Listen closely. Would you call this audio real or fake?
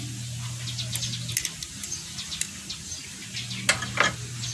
real